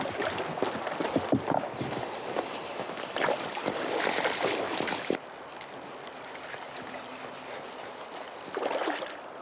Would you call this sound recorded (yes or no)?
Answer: yes